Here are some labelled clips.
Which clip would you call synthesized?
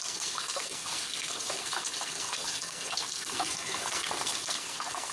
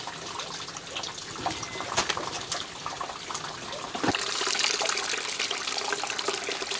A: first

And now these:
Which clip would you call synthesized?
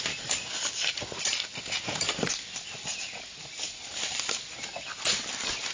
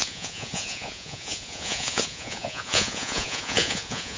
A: second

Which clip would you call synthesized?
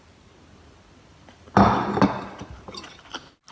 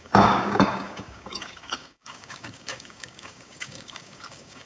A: second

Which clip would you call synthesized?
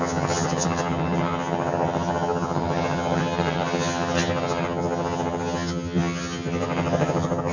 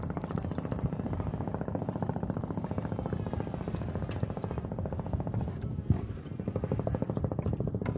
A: first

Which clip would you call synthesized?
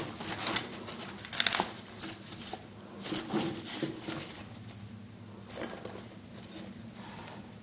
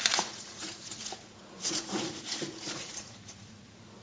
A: second